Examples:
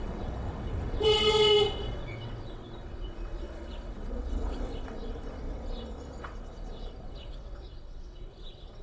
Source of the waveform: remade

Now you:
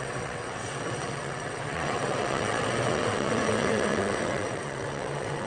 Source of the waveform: remade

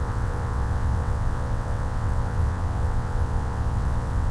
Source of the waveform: remade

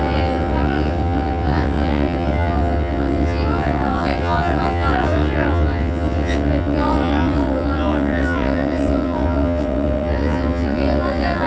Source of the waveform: remade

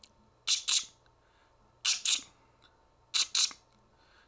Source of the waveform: recorded